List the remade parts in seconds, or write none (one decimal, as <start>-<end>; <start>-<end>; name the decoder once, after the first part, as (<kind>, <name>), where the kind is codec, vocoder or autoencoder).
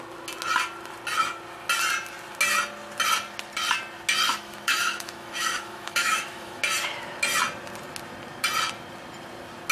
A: 4.3-6.6 (autoencoder, DAC-VAE)